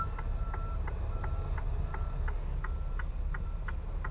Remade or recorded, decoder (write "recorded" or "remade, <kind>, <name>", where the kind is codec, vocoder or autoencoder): recorded